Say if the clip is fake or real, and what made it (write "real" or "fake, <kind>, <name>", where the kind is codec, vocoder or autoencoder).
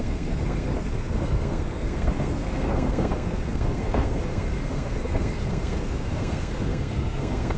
fake, codec, SNAC